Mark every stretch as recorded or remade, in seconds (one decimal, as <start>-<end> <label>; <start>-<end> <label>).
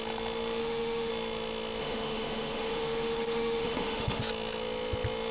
0.0-0.6 recorded; 0.6-1.1 remade; 1.1-1.8 recorded; 1.8-4.2 remade; 4.2-5.3 recorded